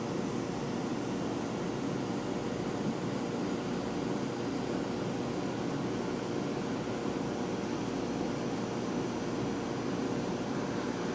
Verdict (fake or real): real